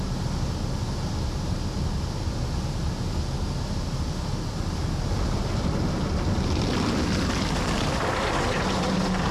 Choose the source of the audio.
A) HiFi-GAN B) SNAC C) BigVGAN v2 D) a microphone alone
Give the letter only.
D